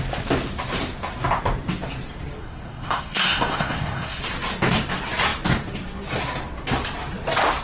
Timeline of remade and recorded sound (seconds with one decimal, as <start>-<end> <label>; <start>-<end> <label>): 0.0-2.4 recorded; 2.4-4.2 remade; 4.2-7.6 recorded